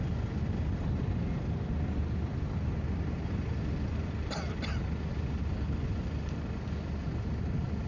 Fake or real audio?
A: real